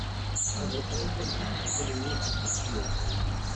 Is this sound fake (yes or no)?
no